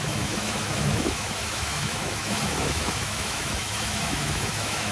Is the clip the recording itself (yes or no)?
no